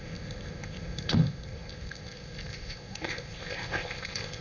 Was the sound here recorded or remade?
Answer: remade